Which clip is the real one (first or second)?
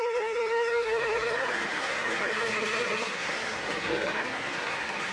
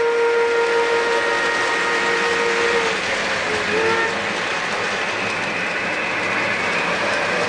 second